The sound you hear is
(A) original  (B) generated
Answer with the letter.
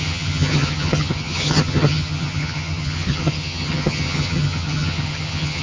B